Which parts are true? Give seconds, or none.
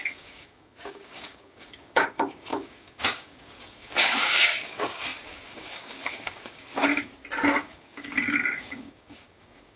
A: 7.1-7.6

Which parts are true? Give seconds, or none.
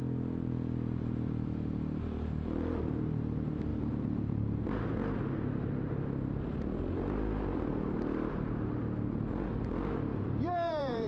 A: 0.0-10.1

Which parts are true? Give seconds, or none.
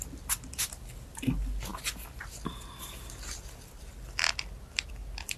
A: 0.0-5.4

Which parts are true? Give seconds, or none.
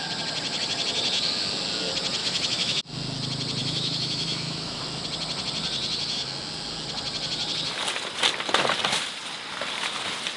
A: 0.0-2.2; 2.8-3.6; 4.8-10.4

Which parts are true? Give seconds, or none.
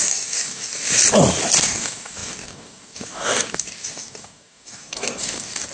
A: 1.0-1.6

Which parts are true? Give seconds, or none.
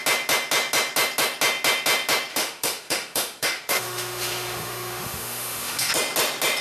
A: 0.0-2.3; 5.9-6.6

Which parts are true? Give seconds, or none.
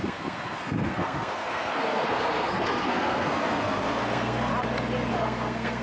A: 4.5-5.1